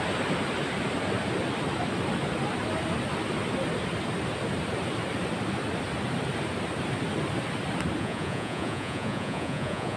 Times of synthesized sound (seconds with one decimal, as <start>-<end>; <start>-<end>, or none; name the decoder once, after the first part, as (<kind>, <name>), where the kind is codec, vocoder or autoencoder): 8.0-10.0 (vocoder, Vocos)